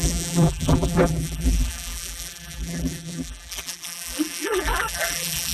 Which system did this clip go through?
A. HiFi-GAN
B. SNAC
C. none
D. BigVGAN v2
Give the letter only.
D